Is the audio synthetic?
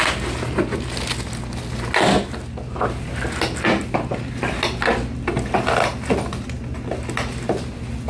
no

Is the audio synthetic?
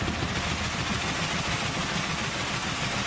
no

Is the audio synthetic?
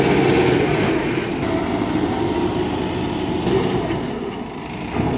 no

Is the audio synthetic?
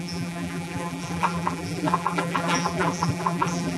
yes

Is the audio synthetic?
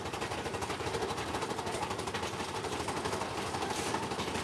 yes